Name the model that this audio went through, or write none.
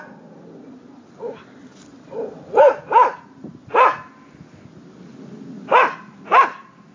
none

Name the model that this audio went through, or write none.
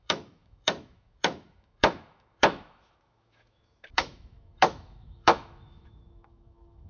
autoencoder, DAC-VAE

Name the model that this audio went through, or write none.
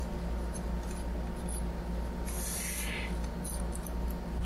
none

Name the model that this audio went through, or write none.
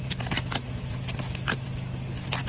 none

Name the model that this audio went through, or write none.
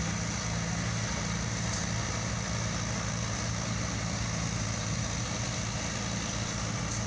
none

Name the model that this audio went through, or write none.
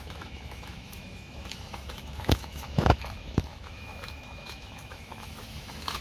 autoencoder, DAC-VAE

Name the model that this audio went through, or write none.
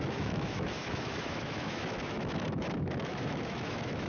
autoencoder, DAC-VAE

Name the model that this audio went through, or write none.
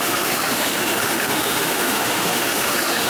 autoencoder, DAC-VAE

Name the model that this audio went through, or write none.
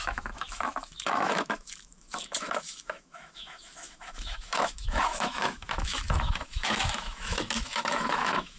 autoencoder, DAC-VAE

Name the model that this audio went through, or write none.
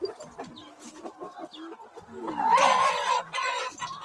none